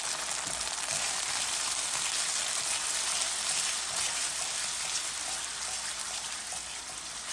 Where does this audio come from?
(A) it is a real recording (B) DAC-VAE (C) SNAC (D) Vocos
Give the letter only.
A